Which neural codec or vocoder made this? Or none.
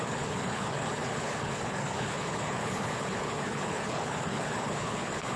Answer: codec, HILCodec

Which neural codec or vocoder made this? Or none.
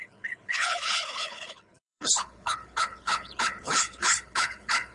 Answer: codec, HILCodec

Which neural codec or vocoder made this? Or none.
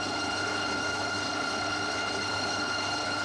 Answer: codec, HILCodec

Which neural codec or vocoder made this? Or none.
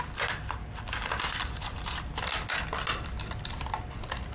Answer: none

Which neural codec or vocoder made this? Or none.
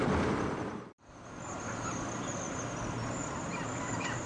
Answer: none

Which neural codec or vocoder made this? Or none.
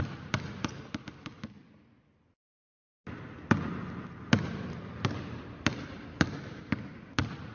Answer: none